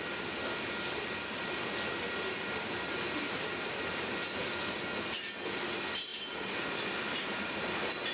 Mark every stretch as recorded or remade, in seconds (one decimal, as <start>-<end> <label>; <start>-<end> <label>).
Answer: 0.0-8.1 recorded